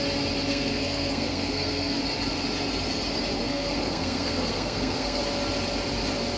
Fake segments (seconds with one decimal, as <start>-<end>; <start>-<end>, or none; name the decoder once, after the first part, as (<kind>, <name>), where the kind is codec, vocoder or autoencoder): 0.5-2.0 (codec, SNAC); 3.4-5.2